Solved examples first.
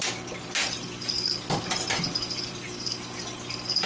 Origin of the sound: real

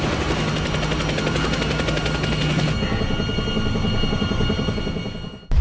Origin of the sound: real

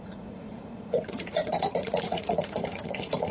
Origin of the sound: fake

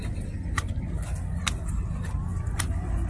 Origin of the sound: real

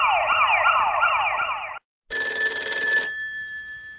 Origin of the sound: real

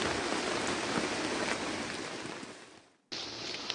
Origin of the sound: real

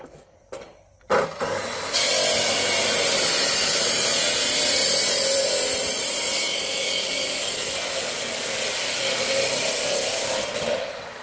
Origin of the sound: fake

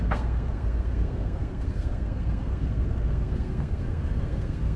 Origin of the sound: fake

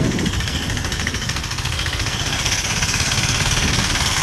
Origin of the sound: fake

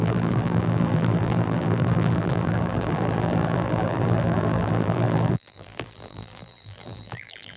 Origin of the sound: fake